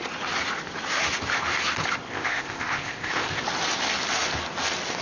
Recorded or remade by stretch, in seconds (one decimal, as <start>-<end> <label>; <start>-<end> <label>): 0.0-2.1 recorded; 2.1-3.4 remade; 3.4-5.0 recorded